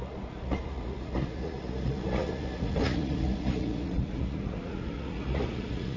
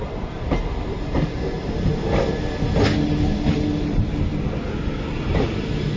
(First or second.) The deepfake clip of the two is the first